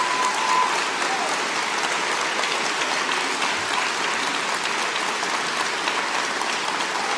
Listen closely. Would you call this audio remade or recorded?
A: recorded